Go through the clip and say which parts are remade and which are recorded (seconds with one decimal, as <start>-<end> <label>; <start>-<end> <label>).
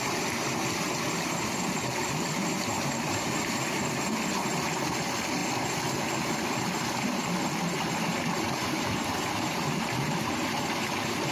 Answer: 0.0-11.3 recorded